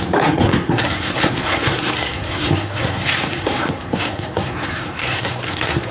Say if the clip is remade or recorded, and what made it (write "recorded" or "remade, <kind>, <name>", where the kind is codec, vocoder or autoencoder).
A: remade, codec, SNAC